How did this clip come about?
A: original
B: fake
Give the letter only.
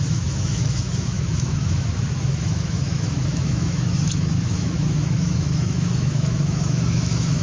B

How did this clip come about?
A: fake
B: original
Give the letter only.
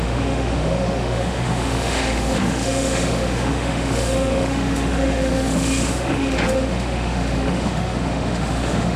A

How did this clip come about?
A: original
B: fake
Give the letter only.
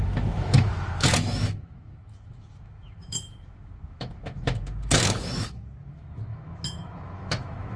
B